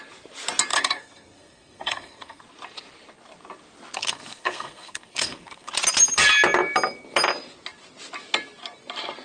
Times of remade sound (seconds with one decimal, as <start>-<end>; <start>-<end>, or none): 0.7-2.4; 4.0-5.7